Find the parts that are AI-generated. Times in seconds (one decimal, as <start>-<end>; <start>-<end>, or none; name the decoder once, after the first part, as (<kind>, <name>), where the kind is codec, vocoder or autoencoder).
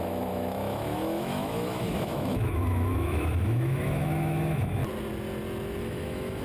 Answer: 0.0-4.8 (autoencoder, DAC-VAE); 5.8-6.4